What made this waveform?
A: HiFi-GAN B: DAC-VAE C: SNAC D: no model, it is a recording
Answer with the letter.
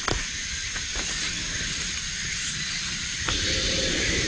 D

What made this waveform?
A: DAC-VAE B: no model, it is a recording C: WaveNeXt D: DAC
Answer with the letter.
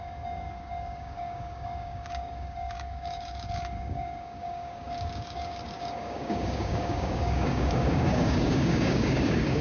D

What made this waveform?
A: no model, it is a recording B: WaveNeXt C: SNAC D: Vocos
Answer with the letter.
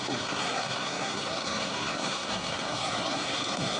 C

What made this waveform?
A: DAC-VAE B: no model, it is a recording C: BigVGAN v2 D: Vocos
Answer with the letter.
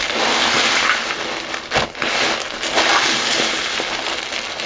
B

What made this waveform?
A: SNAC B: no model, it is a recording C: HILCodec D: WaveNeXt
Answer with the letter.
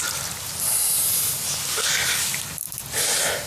B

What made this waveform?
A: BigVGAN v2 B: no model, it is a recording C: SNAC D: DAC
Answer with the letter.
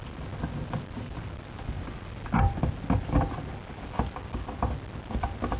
B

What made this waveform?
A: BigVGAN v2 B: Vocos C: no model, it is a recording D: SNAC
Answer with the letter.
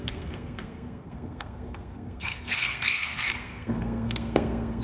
D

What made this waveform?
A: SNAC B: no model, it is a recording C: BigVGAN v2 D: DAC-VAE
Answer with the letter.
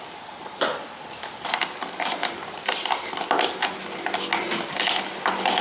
B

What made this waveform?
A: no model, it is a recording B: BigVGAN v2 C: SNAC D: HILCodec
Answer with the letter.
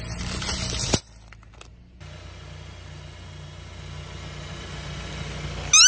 A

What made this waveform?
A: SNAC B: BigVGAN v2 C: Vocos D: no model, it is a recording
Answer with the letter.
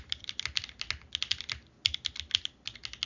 D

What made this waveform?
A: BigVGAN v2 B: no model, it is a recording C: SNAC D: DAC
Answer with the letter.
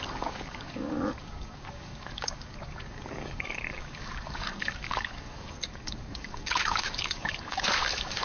D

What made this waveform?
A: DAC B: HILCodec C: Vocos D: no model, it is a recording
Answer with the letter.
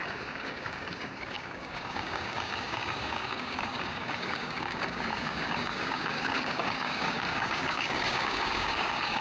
A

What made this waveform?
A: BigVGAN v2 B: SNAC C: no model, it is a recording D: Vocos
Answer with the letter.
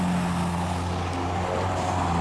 C